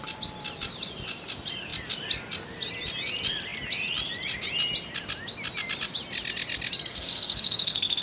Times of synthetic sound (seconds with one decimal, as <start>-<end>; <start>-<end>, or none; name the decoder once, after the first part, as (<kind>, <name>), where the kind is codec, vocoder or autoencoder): 6.9-8.0 (codec, SNAC)